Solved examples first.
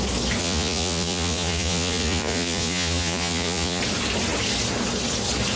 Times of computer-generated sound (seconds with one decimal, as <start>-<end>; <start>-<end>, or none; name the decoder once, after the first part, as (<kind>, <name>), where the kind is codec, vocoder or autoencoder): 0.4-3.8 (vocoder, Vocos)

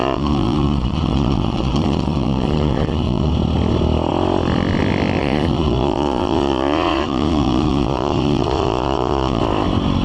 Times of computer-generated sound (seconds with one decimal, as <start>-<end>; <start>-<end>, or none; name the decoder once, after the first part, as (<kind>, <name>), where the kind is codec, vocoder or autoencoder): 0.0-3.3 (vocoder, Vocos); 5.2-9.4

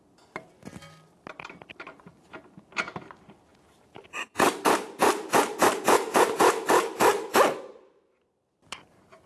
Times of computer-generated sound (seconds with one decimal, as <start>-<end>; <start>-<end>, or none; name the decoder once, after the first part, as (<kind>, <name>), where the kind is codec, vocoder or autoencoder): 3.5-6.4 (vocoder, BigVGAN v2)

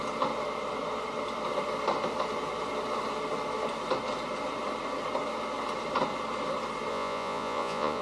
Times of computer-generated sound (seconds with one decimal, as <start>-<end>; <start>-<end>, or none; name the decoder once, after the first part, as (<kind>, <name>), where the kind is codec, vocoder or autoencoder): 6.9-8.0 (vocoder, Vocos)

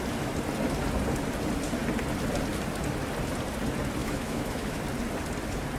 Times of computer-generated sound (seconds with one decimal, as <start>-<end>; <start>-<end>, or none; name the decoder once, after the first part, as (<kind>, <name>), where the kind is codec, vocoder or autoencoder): 4.0-4.8 (autoencoder, DAC-VAE)